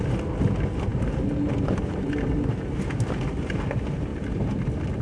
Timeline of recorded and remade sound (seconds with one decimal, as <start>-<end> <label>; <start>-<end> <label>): 0.0-4.1 recorded; 4.1-4.6 remade; 4.6-5.0 recorded